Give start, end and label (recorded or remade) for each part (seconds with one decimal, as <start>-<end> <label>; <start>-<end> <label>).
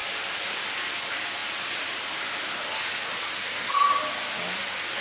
0.0-3.4 recorded; 3.4-3.9 remade; 3.9-5.0 recorded